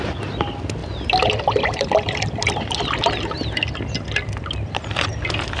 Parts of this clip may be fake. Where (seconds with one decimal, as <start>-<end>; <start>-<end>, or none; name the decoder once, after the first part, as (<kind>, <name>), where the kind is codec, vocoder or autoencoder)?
none

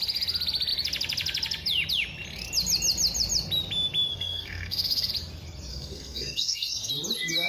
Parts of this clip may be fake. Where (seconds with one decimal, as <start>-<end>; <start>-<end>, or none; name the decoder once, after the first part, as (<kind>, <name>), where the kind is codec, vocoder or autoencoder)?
4.1-5.1 (codec, SNAC); 5.7-6.9

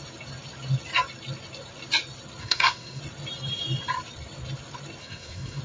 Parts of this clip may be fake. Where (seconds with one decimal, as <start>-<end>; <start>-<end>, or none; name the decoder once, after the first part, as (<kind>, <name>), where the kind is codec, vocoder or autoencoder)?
2.4-3.0 (codec, SNAC); 5.0-5.6

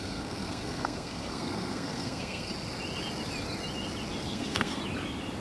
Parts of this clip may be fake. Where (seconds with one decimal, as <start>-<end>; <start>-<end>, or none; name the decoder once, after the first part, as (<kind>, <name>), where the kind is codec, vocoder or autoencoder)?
0.0-2.5 (codec, SNAC); 4.2-4.8

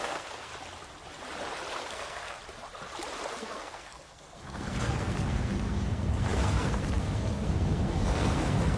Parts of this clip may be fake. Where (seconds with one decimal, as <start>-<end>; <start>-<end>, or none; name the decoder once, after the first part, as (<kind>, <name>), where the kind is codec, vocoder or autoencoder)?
0.0-0.5 (codec, SNAC); 1.8-2.4; 3.3-8.8

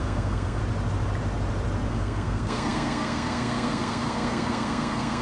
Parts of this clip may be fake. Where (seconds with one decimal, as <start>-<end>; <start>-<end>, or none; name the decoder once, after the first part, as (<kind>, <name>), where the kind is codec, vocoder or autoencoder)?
0.0-0.6 (codec, SNAC); 1.9-5.2